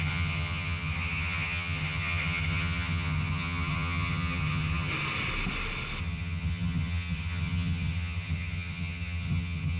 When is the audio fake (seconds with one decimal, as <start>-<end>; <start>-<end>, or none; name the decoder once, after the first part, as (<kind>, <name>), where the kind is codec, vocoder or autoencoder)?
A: 0.0-4.9 (vocoder, HiFi-GAN); 6.0-9.8